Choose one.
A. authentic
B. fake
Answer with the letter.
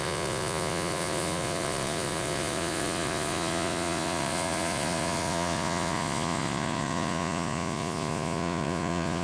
B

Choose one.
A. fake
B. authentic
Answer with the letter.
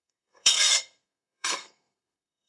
A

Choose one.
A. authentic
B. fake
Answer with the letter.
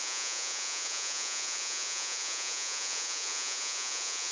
B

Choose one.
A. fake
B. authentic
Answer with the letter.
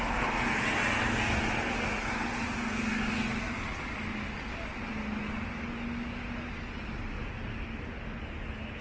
B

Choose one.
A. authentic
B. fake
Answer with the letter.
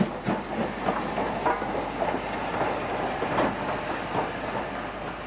A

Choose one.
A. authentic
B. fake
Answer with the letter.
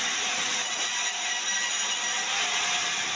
A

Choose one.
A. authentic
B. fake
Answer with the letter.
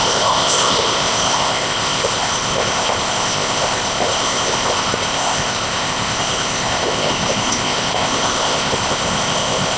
B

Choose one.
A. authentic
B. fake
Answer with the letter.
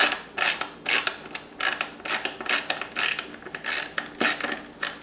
A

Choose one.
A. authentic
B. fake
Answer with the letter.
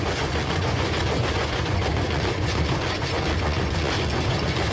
B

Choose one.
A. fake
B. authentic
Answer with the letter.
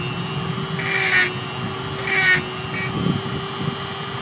B